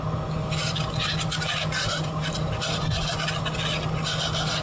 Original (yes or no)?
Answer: yes